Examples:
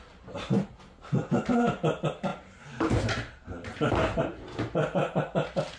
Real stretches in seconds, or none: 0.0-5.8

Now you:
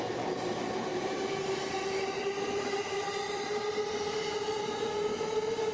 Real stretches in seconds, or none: 0.0-0.9; 3.7-5.7

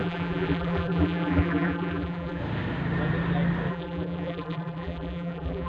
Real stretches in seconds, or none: 2.4-3.7

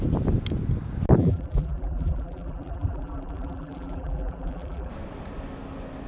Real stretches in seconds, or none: 0.0-1.2; 4.9-6.1